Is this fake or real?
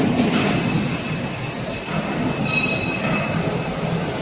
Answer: real